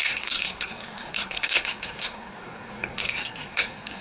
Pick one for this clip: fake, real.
fake